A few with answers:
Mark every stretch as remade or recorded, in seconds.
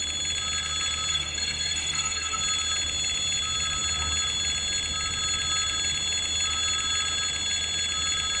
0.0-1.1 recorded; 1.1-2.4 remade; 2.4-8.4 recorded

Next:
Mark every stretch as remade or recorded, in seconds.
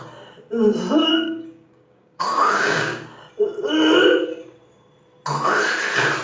0.0-1.0 recorded; 1.0-3.2 remade; 3.2-6.2 recorded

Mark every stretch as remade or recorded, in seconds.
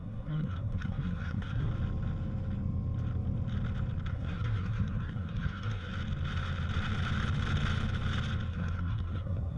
0.0-1.7 remade; 1.7-4.1 recorded; 4.1-5.9 remade; 5.9-8.5 recorded; 8.5-9.6 remade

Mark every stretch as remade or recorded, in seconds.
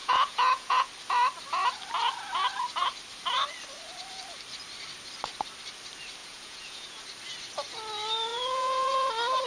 0.0-0.9 remade; 0.9-6.2 recorded; 6.2-7.0 remade; 7.0-8.3 recorded; 8.3-9.1 remade; 9.1-9.5 recorded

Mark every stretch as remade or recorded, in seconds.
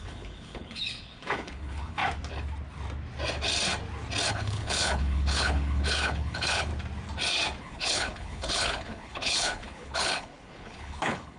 0.0-2.0 remade; 2.0-4.3 recorded; 4.3-6.7 remade; 6.7-7.6 recorded; 7.6-11.4 remade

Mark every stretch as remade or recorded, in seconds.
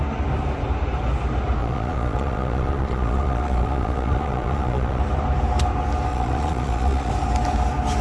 0.0-1.6 recorded; 1.6-5.0 remade; 5.0-6.1 recorded; 6.1-7.1 remade; 7.1-8.0 recorded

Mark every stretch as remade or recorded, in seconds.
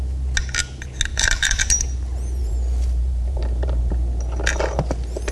0.0-1.1 recorded; 1.1-1.6 remade; 1.6-2.4 recorded; 2.4-3.9 remade; 3.9-5.3 recorded